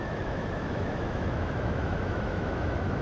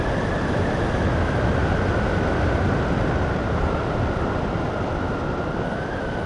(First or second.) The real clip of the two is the second